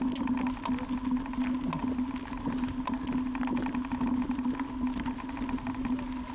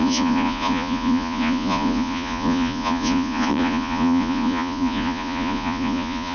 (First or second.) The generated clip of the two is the second